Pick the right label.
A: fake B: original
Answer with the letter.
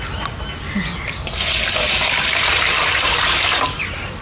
B